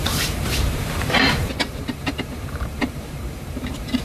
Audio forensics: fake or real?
fake